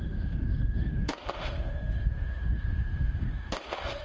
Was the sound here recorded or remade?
remade